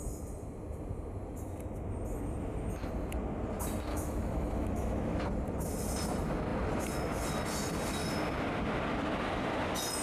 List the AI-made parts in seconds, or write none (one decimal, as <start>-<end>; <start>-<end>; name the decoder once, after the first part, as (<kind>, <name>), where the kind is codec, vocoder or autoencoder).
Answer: 3.9-5.2 (autoencoder, DAC-VAE)